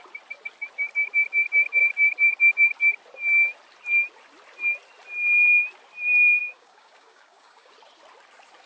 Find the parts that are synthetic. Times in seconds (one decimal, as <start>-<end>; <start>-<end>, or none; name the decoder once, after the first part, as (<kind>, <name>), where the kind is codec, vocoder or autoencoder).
6.4-7.7 (codec, DAC)